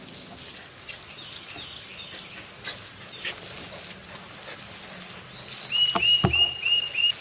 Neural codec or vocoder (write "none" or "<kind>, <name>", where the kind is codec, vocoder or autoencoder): none